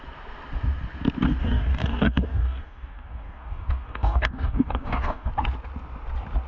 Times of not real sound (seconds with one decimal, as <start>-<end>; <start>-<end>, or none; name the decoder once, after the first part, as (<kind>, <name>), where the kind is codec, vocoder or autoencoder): 1.4-5.3 (codec, DAC)